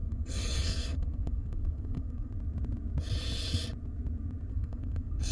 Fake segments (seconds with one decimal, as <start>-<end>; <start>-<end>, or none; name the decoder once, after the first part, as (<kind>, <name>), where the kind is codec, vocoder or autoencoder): 0.0-2.3 (codec, SNAC); 4.5-5.3